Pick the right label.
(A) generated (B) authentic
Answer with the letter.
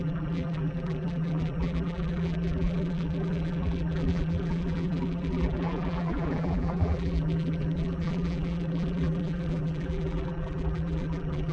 A